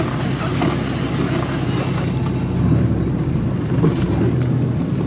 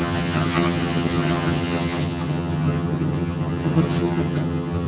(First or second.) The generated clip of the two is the second